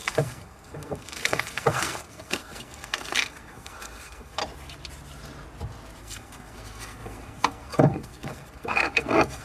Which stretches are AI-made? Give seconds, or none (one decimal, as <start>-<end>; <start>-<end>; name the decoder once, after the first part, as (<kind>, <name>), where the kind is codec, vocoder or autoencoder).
0.0-4.4 (codec, SNAC); 6.0-9.4